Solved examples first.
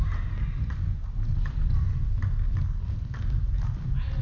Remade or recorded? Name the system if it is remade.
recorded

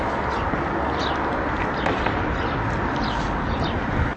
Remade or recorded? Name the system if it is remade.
recorded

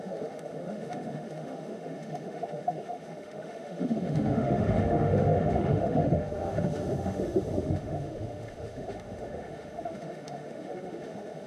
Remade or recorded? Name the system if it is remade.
remade, autoencoder, DAC-VAE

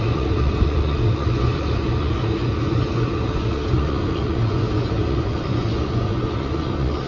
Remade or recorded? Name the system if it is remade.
remade, vocoder, Vocos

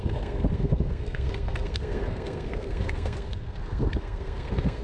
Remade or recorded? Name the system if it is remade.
remade, codec, SNAC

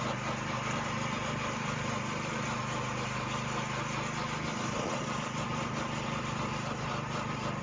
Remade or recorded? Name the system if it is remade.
recorded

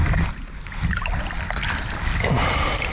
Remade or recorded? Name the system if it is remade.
recorded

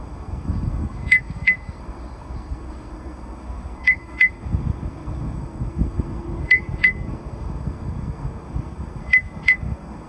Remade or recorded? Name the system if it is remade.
remade, codec, SNAC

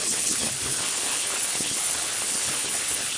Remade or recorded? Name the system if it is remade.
remade, codec, HILCodec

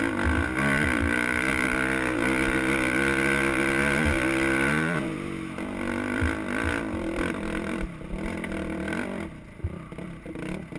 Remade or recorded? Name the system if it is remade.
recorded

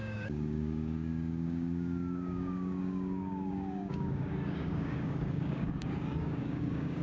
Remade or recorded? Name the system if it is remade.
remade, codec, DAC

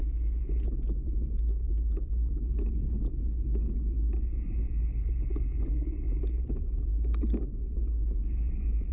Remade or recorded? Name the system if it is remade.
recorded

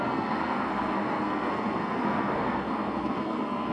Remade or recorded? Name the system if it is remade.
remade, codec, SNAC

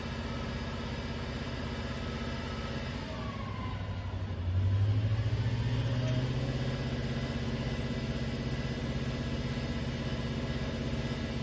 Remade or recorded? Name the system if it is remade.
recorded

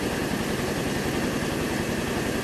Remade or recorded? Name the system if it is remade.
recorded